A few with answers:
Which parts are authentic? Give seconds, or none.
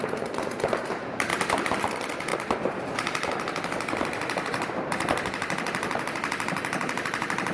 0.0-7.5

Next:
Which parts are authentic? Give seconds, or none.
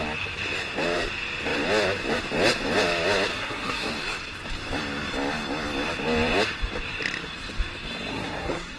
0.0-3.3; 3.9-8.1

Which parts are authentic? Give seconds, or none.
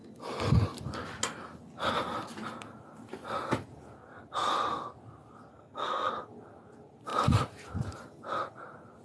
0.0-5.5; 6.1-9.0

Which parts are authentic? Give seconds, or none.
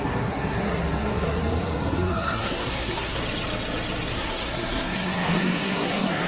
3.2-4.1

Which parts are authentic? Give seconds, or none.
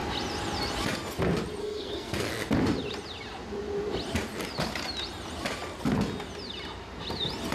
0.0-1.6; 2.3-7.5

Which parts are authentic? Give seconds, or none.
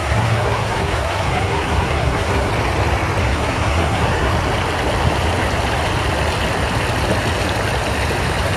2.5-3.2; 4.3-8.6